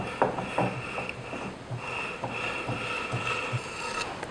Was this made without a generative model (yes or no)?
yes